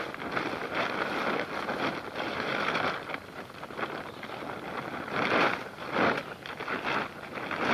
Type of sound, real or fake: real